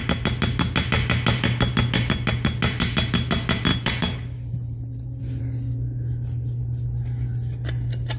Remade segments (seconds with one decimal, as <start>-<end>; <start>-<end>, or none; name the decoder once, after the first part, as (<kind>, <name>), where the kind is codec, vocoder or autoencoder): 3.7-5.4 (vocoder, BigVGAN v2)